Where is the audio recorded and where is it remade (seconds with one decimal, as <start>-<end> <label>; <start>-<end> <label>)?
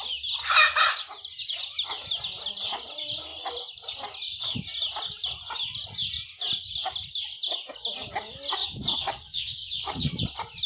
0.0-8.6 recorded; 8.6-10.2 remade; 10.2-10.7 recorded